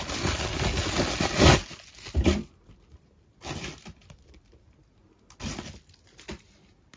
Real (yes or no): yes